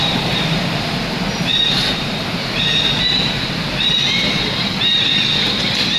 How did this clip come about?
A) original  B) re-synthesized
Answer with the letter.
A